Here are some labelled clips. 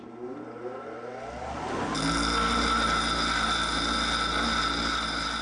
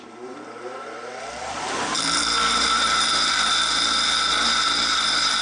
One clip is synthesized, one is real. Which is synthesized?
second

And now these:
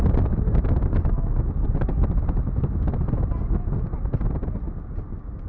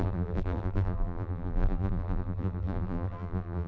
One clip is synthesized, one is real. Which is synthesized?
second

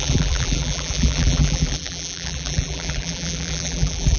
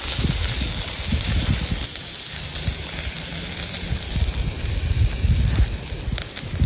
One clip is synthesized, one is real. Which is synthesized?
first